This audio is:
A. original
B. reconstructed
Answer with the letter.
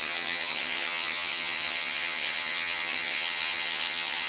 B